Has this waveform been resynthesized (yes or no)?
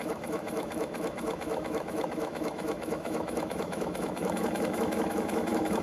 yes